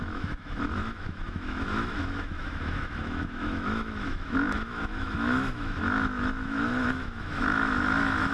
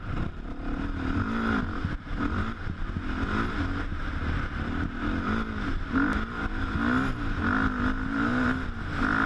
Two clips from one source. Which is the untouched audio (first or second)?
second